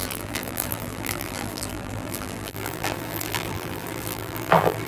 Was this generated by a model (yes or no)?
yes